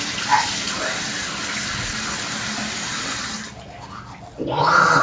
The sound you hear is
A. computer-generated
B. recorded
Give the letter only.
B